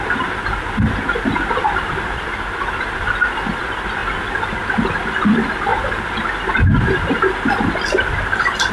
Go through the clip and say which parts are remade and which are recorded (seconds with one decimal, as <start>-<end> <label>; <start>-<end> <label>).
0.0-8.7 recorded

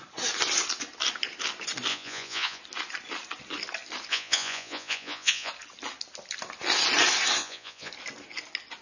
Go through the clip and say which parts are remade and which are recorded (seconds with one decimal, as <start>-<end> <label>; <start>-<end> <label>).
0.0-1.9 recorded; 1.9-2.6 remade; 2.6-4.1 recorded; 4.1-5.5 remade; 5.5-7.4 recorded; 7.4-7.9 remade; 7.9-8.8 recorded

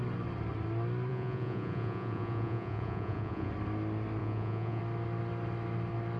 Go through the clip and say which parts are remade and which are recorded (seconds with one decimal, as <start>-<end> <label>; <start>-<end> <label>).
0.0-1.1 recorded; 1.1-3.5 remade; 3.5-4.2 recorded; 4.2-4.8 remade; 4.8-6.2 recorded

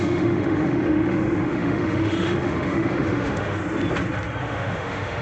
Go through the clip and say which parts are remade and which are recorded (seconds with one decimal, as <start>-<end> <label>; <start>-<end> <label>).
0.0-3.6 remade; 3.6-4.4 recorded; 4.4-5.2 remade